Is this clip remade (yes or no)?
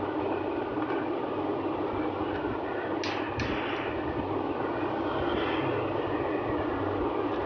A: no